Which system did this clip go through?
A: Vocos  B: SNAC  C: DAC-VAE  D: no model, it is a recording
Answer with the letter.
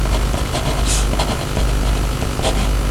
D